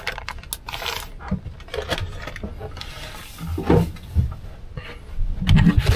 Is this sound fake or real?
real